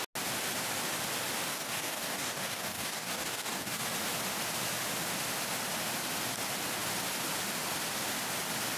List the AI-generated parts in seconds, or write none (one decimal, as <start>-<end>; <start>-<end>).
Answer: 1.5-3.8